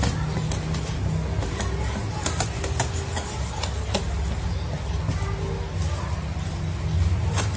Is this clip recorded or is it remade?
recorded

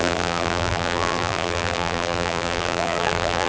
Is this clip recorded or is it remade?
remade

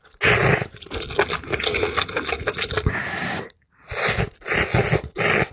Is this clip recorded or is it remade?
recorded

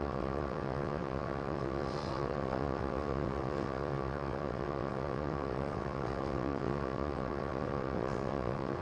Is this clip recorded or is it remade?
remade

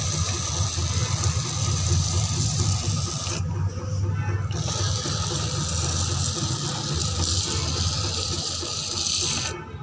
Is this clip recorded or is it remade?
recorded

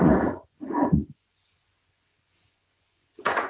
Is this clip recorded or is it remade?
remade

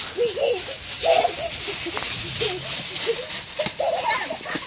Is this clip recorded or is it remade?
recorded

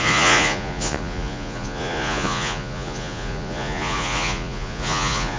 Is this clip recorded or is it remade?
remade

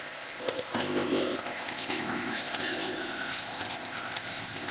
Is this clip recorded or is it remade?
remade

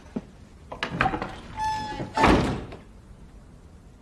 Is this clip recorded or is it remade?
recorded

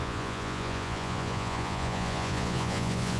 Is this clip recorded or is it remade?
remade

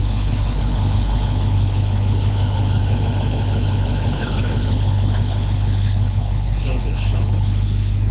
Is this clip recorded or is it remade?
remade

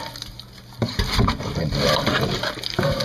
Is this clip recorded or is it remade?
recorded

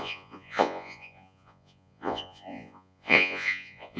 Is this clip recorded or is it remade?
remade